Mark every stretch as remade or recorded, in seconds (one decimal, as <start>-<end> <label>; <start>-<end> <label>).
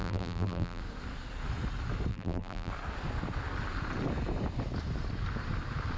0.0-0.8 remade; 0.8-2.1 recorded; 2.1-2.7 remade; 2.7-6.0 recorded